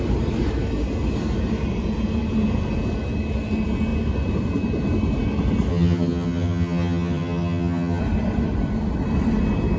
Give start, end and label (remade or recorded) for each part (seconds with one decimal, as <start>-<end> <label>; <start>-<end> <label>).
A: 0.0-5.7 recorded; 5.7-8.0 remade; 8.0-9.8 recorded